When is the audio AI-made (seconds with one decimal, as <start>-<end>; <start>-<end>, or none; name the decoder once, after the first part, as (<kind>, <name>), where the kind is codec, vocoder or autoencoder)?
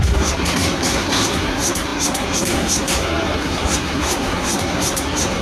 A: 0.0-5.4 (codec, SNAC)